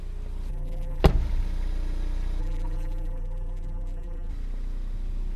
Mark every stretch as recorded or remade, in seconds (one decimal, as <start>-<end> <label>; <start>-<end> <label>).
0.0-0.5 recorded; 0.5-1.0 remade; 1.0-2.4 recorded; 2.4-4.3 remade; 4.3-5.4 recorded